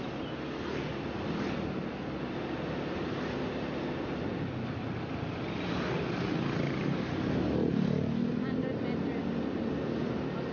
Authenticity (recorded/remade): recorded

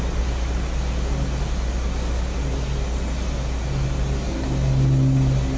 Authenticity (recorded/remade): recorded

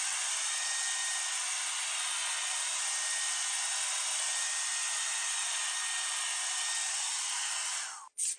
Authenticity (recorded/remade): recorded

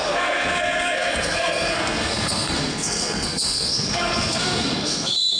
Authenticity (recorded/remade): remade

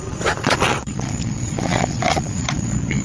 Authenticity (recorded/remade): remade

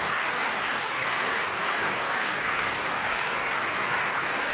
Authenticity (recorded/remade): remade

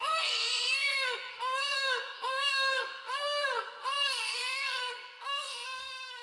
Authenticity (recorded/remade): remade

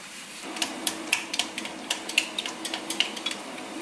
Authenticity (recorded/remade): remade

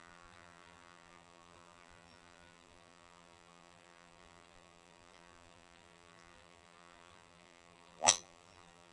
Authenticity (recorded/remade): remade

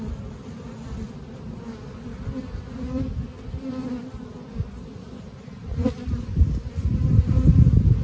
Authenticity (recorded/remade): recorded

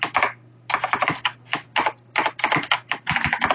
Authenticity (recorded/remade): recorded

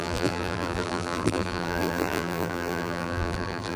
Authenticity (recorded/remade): remade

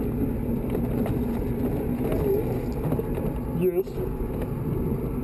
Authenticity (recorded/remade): recorded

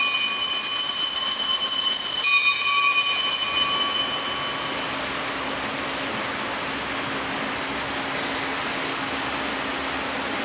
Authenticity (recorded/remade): recorded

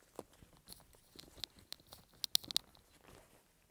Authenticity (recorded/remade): recorded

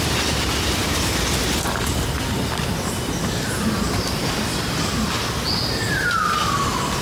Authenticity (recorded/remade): recorded